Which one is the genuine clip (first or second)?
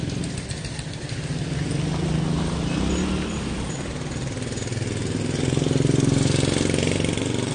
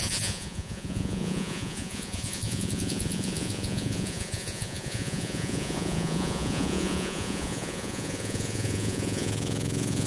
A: first